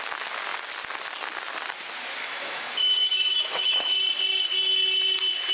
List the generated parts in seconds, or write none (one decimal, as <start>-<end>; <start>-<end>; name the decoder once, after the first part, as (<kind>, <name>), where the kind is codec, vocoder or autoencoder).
2.2-4.0 (autoencoder, DAC-VAE)